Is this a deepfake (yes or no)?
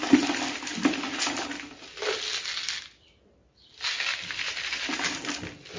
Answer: no